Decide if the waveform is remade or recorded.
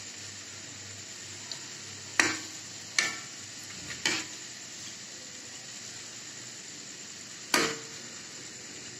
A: recorded